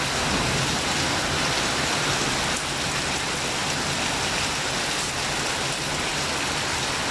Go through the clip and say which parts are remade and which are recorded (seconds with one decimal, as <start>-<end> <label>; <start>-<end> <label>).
0.0-7.1 recorded